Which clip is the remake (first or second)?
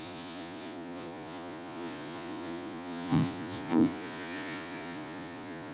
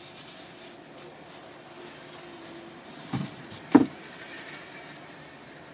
first